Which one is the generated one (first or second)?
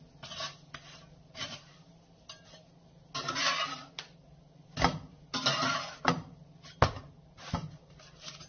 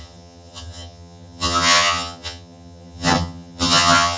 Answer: second